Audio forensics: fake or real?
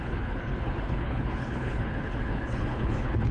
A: fake